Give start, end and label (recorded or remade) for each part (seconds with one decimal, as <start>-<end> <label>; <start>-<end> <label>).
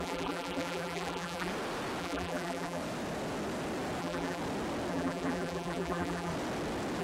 0.0-1.5 remade; 1.5-2.0 recorded; 2.0-2.8 remade; 2.8-4.0 recorded; 4.0-4.4 remade; 4.4-4.9 recorded; 4.9-6.3 remade; 6.3-7.0 recorded